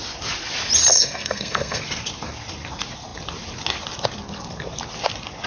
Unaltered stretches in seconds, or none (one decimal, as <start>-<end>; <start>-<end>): 0.0-0.9; 1.8-5.5